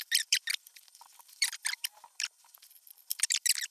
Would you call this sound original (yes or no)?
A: no